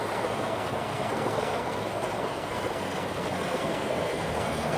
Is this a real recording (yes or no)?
no